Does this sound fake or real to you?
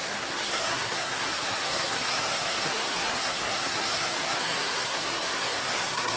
fake